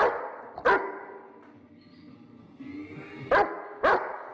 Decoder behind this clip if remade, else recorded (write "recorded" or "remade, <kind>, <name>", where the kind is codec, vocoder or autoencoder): recorded